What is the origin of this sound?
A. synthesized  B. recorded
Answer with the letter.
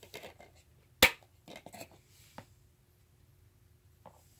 B